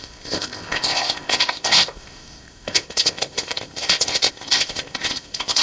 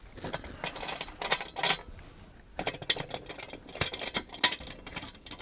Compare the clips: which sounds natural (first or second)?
second